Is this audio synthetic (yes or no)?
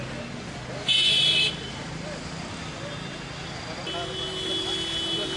no